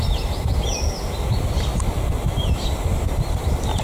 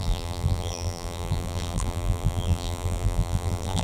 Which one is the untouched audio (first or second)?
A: first